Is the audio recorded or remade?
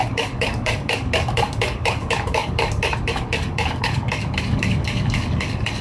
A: remade